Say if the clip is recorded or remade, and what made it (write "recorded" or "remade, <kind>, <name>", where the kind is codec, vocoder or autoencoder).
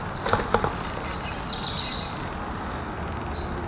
recorded